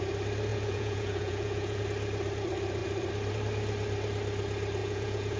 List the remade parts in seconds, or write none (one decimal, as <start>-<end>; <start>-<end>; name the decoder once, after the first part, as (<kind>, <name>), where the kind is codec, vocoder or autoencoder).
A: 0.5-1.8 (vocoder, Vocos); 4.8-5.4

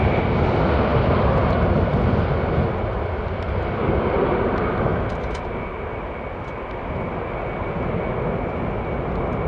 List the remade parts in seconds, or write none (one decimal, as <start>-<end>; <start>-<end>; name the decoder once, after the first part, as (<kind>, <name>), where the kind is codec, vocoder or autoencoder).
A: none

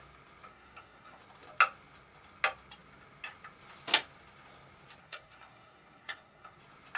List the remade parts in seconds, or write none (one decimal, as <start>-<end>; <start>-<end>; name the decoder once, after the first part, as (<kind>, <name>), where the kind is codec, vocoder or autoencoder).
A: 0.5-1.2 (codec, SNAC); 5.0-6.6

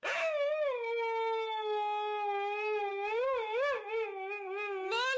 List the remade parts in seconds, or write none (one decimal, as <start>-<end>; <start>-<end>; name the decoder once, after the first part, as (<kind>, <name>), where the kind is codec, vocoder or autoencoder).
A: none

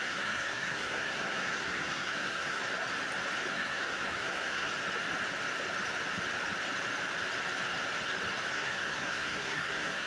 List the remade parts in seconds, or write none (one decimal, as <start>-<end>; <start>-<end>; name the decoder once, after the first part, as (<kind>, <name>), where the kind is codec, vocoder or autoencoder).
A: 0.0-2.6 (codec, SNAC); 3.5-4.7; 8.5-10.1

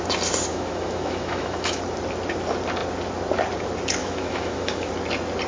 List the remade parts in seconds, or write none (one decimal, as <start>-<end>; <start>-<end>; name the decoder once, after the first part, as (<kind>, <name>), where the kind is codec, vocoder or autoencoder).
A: 0.5-1.8 (autoencoder, DAC-VAE); 4.0-4.9

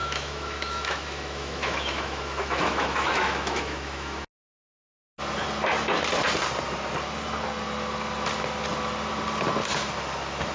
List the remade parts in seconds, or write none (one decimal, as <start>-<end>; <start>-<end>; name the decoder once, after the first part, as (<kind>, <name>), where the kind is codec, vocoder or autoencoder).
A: 0.0-4.2 (autoencoder, DAC-VAE)